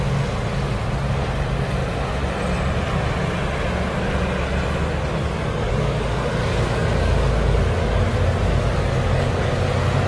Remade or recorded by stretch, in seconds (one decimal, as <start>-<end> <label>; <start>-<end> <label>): 0.0-5.2 recorded; 5.2-8.0 remade; 8.0-8.5 recorded; 8.5-9.5 remade; 9.5-10.1 recorded